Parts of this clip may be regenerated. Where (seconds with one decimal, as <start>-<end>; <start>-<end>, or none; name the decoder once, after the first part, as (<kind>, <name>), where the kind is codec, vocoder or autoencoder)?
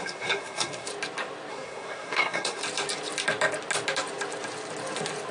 0.0-0.9 (codec, SNAC); 1.5-2.6